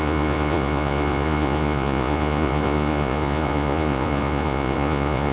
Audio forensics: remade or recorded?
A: remade